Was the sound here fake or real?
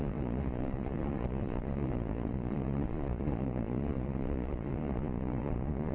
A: fake